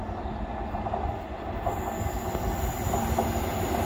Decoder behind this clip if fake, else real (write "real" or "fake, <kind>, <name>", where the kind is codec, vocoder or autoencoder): real